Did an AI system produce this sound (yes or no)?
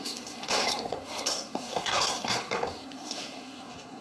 yes